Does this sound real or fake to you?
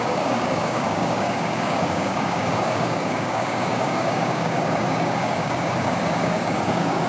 fake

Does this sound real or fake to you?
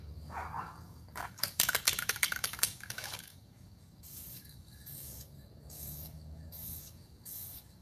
fake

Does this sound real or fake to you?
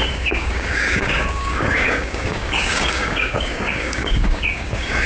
fake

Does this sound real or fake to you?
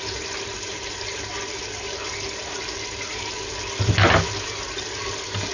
real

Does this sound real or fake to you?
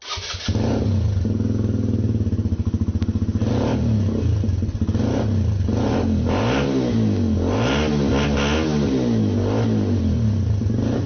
real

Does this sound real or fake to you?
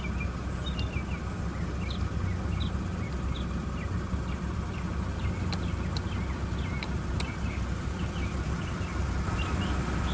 real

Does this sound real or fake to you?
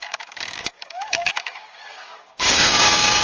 fake